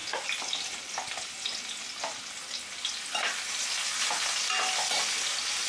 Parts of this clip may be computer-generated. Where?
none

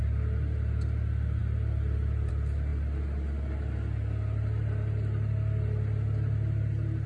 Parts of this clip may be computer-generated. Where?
none